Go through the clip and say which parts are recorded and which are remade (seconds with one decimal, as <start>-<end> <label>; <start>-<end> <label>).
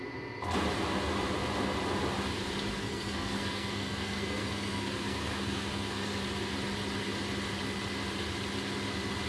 0.0-2.7 recorded; 2.7-6.2 remade; 6.2-9.3 recorded